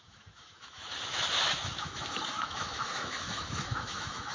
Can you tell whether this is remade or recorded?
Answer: remade